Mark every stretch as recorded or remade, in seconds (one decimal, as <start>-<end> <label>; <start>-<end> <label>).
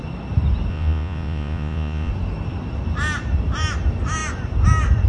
0.0-0.7 recorded; 0.7-2.1 remade; 2.1-5.1 recorded